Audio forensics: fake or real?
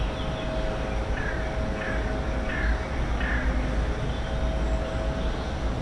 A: real